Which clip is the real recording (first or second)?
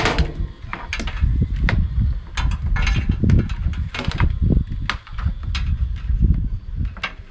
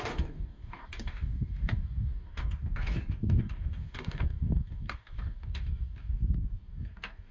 first